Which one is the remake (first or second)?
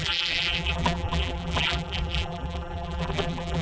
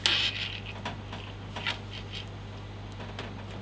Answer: first